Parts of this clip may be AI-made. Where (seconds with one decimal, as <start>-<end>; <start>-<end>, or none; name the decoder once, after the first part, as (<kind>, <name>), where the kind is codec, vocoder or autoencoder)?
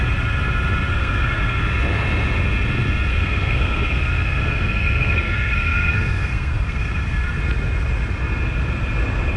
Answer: 0.9-1.6 (codec, SNAC); 3.1-7.4